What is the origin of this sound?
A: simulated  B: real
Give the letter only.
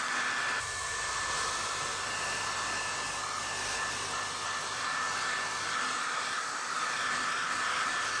B